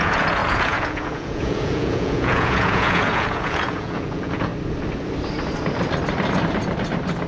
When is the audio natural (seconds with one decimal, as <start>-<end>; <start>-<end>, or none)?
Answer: 4.5-7.3